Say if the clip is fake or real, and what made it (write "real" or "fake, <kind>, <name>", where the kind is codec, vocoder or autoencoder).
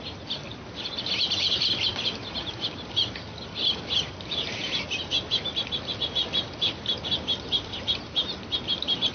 fake, vocoder, BigVGAN v2